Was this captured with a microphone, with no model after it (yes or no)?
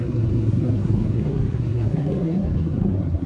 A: no